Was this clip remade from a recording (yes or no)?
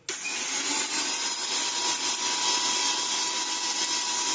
no